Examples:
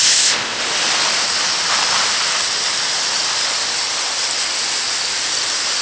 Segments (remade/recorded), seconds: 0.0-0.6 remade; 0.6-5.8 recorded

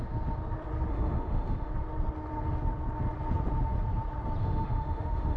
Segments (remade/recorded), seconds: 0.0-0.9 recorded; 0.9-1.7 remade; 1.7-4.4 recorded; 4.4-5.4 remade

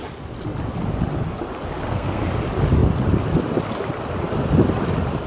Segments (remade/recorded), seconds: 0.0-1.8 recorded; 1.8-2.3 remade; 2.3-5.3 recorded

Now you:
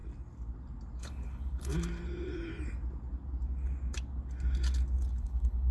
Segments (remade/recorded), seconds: 0.0-1.0 recorded; 1.0-1.7 remade; 1.7-5.1 recorded; 5.1-5.7 remade

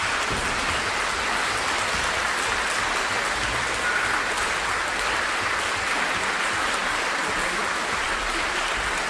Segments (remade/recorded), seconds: 0.0-9.1 recorded

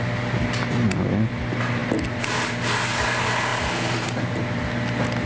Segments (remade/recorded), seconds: 0.0-5.3 recorded

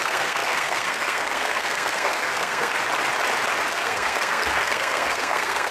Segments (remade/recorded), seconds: 0.0-2.7 remade; 2.7-3.7 recorded; 3.7-5.7 remade